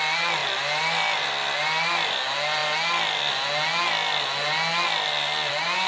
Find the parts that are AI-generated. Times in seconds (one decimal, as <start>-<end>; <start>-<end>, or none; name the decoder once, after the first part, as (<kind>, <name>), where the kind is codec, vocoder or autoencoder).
none